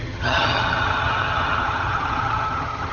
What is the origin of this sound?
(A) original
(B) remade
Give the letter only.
B